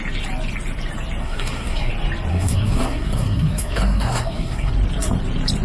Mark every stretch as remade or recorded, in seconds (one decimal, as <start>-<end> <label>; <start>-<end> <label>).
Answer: 0.0-1.2 recorded; 1.2-1.9 remade; 1.9-2.3 recorded; 2.3-4.7 remade; 4.7-5.6 recorded